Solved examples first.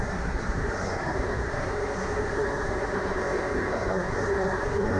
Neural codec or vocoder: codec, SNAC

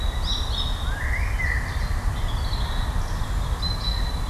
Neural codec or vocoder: none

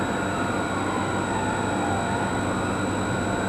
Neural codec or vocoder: none